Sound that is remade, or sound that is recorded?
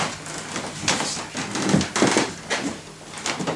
recorded